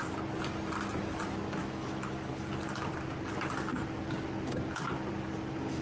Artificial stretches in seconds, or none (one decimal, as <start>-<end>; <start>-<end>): 1.6-2.3